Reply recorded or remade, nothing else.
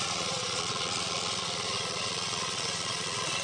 remade